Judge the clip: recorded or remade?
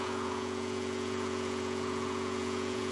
remade